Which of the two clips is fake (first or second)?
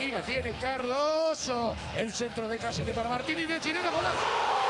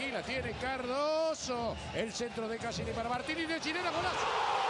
first